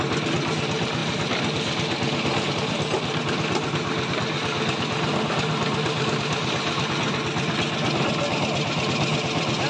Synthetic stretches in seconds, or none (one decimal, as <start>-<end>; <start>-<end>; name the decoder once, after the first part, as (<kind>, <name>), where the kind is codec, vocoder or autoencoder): none